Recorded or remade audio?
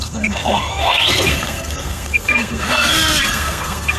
remade